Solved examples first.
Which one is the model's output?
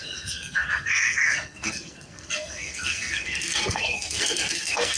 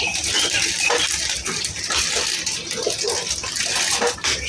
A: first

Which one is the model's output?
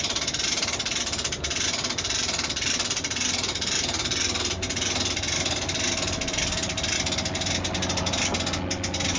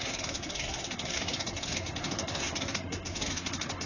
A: second